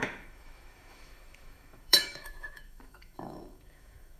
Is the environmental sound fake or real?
fake